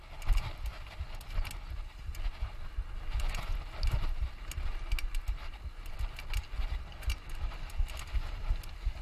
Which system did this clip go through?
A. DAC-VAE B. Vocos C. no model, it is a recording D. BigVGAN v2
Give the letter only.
C